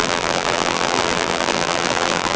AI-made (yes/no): yes